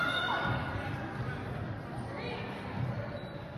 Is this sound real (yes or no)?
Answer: yes